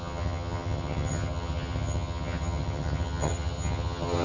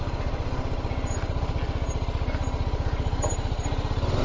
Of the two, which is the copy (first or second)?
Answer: first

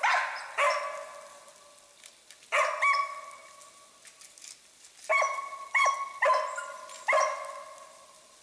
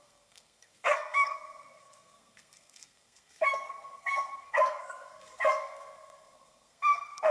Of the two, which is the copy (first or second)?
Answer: second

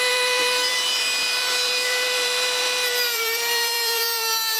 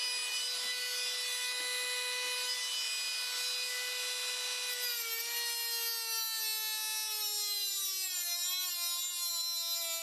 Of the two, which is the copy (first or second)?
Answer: first